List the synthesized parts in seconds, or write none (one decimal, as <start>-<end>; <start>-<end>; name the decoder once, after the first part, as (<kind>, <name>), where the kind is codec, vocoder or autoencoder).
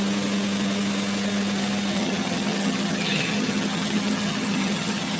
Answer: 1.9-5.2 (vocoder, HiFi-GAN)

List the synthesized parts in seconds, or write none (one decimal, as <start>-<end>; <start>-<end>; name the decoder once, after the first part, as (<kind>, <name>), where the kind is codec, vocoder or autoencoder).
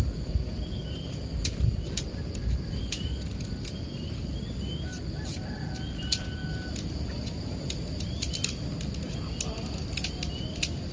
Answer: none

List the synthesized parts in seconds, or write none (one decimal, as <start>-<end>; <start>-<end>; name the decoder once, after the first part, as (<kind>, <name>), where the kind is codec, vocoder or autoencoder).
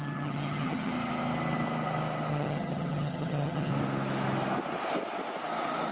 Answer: 0.0-0.9 (vocoder, HiFi-GAN); 2.3-3.7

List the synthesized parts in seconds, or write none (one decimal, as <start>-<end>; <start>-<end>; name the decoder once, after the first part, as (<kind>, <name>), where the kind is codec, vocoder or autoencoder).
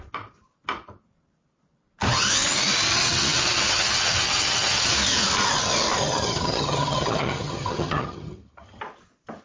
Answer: 2.9-4.9 (vocoder, HiFi-GAN); 6.0-8.8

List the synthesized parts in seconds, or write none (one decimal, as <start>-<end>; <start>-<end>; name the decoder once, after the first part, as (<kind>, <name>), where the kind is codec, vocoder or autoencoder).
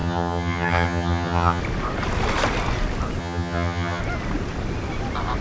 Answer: 0.0-1.6 (vocoder, HiFi-GAN); 3.2-4.0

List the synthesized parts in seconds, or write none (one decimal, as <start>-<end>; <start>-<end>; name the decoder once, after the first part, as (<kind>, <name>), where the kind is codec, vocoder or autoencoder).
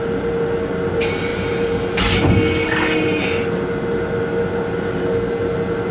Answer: none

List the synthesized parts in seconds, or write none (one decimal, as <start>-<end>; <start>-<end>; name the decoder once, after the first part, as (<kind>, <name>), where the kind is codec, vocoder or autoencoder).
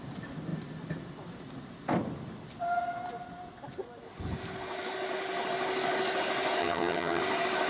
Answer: 6.6-7.2 (vocoder, HiFi-GAN)